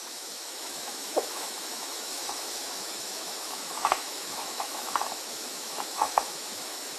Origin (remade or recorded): remade